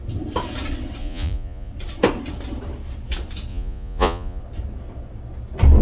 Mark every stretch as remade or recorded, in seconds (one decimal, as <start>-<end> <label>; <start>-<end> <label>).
0.0-1.0 recorded; 1.0-1.7 remade; 1.7-3.5 recorded; 3.5-4.4 remade; 4.4-5.8 recorded